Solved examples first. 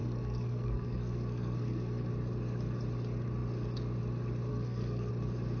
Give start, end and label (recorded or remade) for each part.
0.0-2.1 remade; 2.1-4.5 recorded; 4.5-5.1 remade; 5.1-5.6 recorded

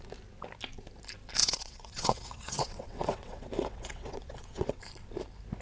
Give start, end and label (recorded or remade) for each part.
0.0-1.4 recorded; 1.4-4.8 remade; 4.8-5.6 recorded

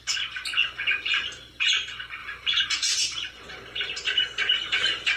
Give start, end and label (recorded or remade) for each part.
0.0-0.6 recorded; 0.6-1.7 remade; 1.7-2.2 recorded; 2.2-3.0 remade; 3.0-5.2 recorded

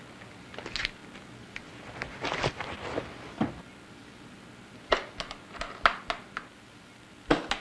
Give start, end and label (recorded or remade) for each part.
0.0-1.0 recorded; 1.0-3.5 remade; 3.5-4.0 recorded; 4.0-4.5 remade; 4.5-7.6 recorded

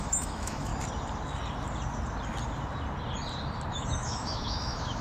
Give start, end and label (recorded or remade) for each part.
0.0-0.7 remade; 0.7-3.7 recorded; 3.7-5.0 remade

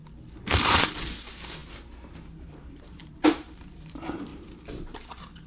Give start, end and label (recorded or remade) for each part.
0.0-0.8 recorded; 0.8-5.5 remade